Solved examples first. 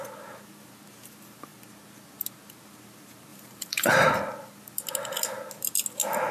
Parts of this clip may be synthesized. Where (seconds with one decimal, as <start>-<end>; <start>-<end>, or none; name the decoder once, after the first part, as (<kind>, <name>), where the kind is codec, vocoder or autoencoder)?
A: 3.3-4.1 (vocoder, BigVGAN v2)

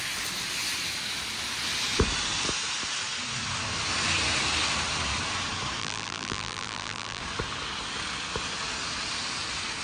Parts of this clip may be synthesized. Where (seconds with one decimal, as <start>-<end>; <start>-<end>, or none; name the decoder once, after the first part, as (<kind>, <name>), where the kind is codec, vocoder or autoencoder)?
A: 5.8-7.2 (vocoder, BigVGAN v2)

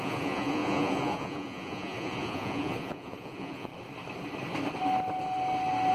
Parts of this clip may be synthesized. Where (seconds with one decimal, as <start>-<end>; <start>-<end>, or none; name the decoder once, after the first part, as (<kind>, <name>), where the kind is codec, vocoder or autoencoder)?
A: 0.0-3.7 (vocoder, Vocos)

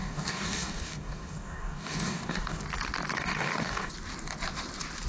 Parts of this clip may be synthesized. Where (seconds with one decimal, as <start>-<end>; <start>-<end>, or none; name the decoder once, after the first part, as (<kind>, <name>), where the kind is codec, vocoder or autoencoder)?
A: 0.0-2.6 (codec, DAC); 3.1-3.9

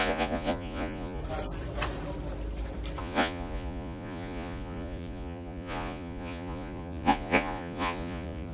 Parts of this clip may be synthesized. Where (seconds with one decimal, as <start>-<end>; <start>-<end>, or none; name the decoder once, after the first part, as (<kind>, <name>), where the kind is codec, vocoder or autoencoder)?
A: 0.0-1.2 (vocoder, Vocos); 3.0-8.5